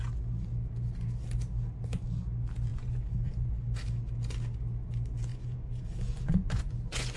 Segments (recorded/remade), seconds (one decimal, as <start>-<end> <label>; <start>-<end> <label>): 0.0-2.7 recorded; 2.7-3.5 remade; 3.5-5.3 recorded; 5.3-7.2 remade